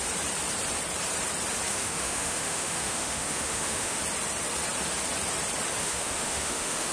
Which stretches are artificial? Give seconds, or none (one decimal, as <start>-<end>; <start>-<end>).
1.7-4.0; 5.8-6.9